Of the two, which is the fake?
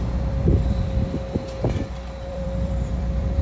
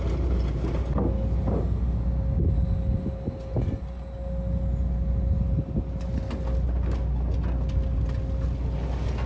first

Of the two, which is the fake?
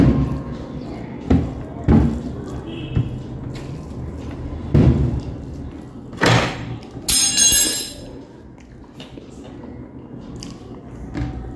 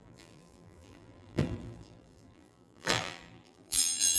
second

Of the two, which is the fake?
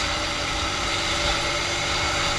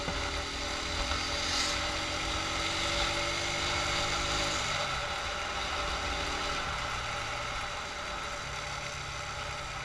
first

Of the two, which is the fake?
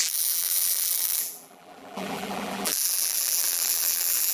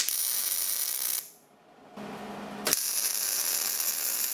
first